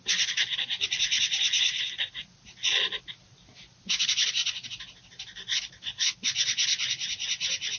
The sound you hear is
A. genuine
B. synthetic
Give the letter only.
A